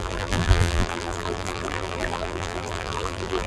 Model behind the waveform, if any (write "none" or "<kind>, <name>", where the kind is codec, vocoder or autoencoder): vocoder, BigVGAN v2